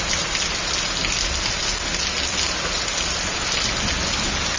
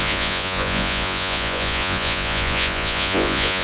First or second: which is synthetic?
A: second